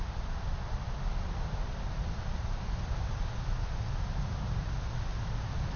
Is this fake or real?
real